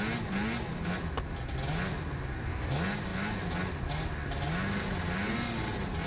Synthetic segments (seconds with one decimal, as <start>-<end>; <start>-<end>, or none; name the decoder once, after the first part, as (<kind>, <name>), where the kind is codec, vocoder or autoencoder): none